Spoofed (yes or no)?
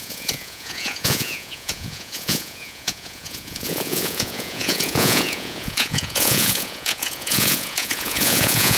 yes